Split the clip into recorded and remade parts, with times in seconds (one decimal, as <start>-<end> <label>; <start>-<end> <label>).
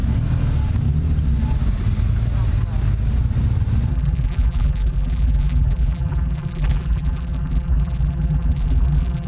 0.0-3.9 recorded; 3.9-9.3 remade